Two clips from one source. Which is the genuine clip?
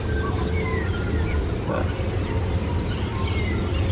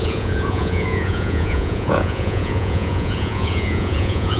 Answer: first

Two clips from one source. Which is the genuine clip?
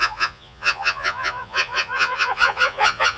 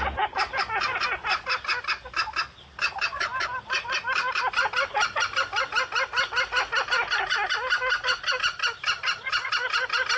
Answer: second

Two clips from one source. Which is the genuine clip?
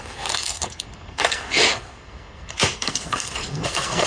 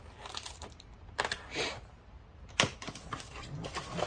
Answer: second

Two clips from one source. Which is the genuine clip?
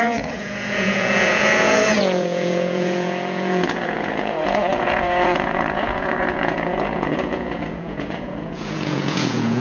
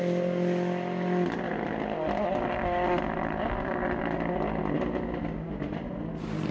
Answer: second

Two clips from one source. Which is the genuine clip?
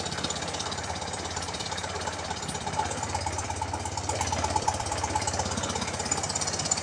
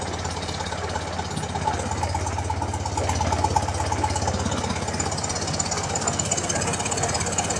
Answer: second